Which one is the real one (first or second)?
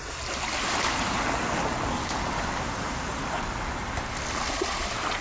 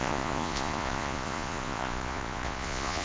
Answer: first